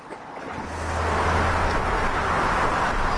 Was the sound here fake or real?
real